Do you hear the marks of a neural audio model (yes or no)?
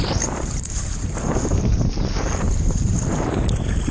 yes